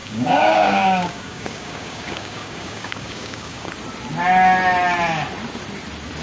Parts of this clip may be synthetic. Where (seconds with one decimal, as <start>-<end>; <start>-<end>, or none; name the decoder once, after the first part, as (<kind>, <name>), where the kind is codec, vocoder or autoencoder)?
0.0-3.7 (codec, DAC)